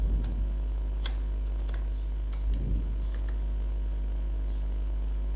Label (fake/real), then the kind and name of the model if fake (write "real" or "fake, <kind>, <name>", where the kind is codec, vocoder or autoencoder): real